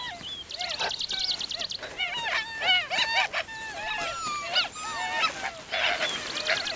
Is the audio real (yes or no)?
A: yes